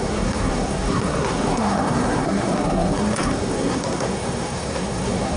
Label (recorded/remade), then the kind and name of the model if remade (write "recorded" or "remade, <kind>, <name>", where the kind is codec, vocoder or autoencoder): remade, codec, SNAC